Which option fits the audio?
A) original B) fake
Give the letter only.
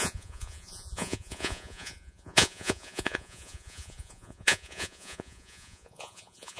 B